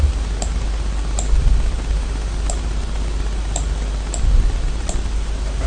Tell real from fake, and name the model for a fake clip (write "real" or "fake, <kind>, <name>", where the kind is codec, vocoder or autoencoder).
real